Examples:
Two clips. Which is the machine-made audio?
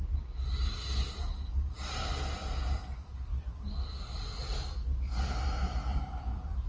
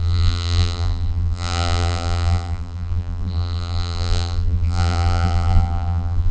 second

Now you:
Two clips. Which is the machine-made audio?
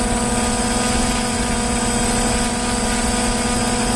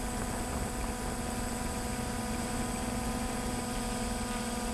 second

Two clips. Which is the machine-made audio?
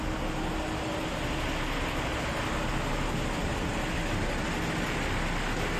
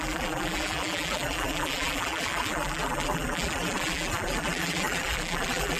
second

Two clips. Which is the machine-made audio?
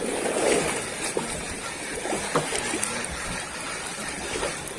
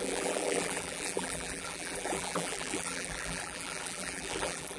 second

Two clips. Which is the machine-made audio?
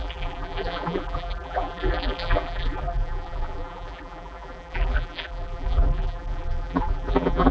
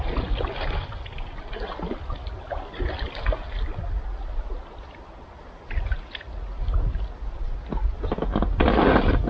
first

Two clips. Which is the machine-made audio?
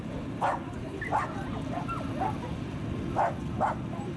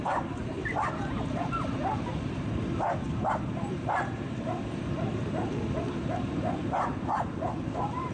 second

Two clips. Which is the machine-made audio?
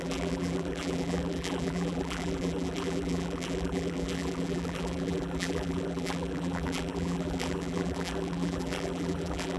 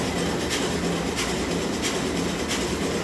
first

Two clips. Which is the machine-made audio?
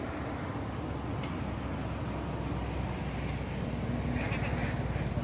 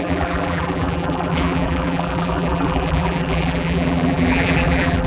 second